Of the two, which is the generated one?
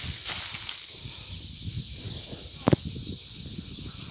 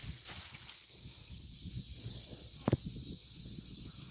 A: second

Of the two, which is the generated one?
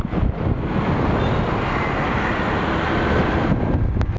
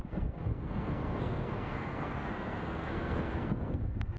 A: second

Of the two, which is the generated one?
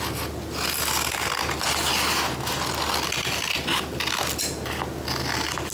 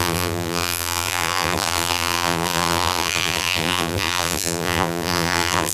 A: second